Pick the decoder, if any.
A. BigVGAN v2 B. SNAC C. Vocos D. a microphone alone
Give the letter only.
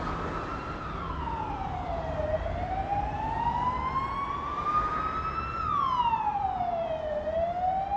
D